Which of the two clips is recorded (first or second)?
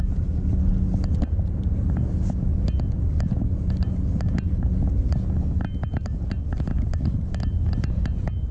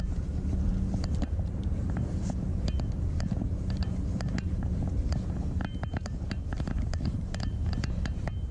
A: first